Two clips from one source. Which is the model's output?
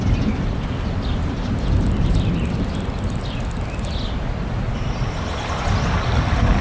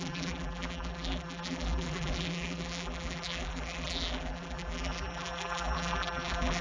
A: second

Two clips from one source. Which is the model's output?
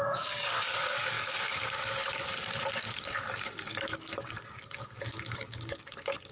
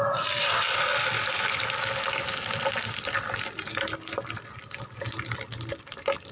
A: first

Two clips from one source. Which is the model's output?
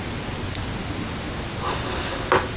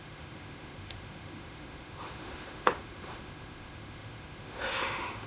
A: second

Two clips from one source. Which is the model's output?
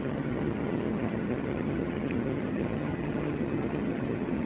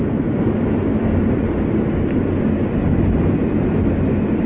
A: first